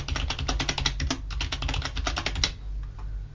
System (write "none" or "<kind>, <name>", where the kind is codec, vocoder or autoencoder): none